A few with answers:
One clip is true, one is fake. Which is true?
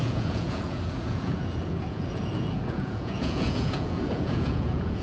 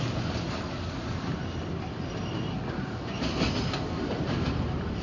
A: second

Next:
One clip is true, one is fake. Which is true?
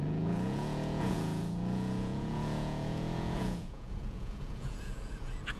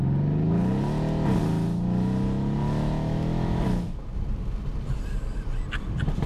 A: second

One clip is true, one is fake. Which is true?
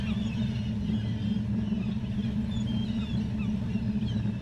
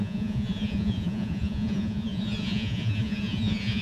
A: first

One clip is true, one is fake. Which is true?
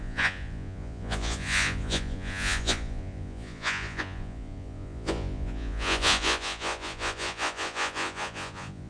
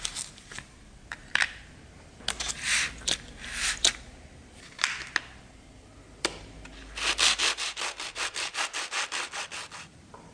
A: second